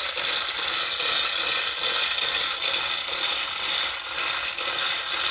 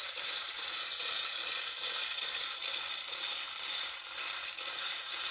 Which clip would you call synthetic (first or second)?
second